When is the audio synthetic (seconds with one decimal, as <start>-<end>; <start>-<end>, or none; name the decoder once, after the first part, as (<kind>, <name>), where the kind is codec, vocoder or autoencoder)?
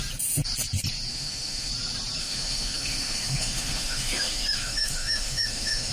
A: 1.1-1.7 (autoencoder, DAC-VAE); 2.2-5.9